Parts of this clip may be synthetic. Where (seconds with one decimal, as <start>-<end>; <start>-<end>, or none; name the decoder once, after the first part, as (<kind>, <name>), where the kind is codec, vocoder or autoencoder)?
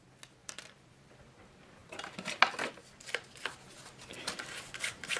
0.4-1.4 (vocoder, BigVGAN v2); 1.8-2.4